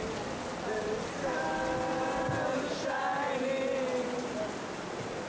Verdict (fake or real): real